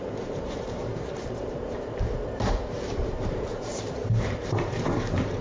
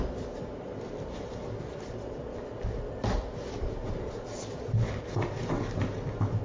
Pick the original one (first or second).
second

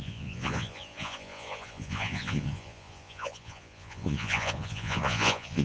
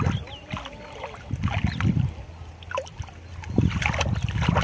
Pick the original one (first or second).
second